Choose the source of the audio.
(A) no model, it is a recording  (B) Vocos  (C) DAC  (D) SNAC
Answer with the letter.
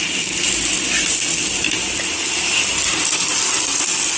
A